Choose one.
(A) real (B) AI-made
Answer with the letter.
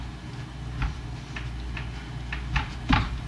A